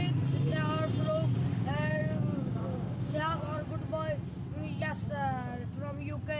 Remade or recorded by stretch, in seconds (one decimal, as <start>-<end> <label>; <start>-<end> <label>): 0.0-1.5 recorded; 1.5-3.3 remade; 3.3-6.4 recorded